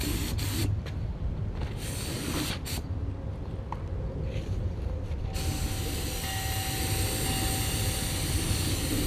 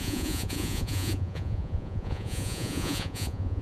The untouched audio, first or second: first